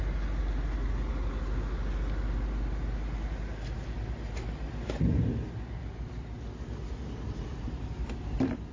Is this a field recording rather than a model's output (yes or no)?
yes